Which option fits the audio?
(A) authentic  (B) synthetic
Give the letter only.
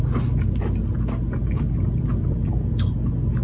A